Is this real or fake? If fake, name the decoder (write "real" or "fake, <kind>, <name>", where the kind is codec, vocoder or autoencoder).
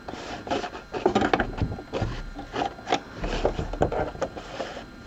real